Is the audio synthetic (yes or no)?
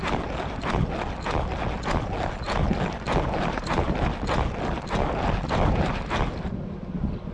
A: no